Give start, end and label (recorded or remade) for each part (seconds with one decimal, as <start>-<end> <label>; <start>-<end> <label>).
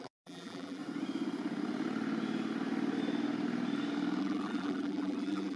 0.0-0.8 remade; 0.8-4.2 recorded; 4.2-5.6 remade